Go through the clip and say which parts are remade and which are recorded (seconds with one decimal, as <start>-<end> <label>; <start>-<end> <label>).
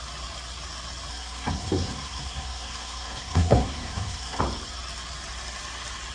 0.0-1.1 recorded; 1.1-4.4 remade; 4.4-6.1 recorded